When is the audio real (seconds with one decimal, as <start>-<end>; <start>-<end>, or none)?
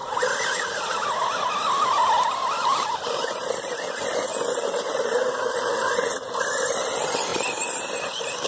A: 1.5-2.7; 3.4-4.3; 5.7-8.5